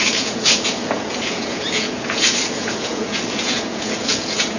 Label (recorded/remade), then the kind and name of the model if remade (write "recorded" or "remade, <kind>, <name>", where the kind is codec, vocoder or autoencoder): remade, vocoder, Vocos